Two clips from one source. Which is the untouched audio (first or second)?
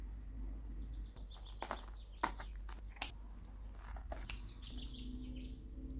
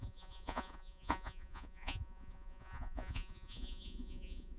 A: first